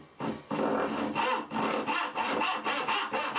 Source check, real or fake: real